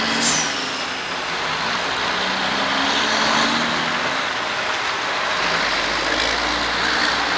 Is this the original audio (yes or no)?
yes